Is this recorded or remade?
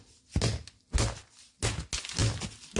recorded